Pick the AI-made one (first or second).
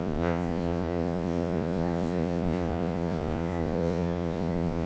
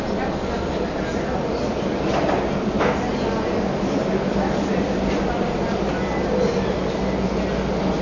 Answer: first